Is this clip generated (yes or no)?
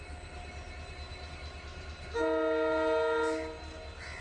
no